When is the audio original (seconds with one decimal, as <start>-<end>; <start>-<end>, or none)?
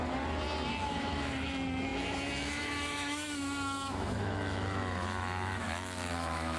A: 0.0-0.7